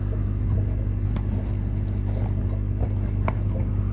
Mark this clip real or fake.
real